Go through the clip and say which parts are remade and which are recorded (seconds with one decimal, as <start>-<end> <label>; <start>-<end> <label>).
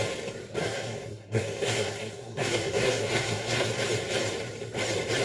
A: 0.0-0.6 recorded; 0.6-3.7 remade; 3.7-5.2 recorded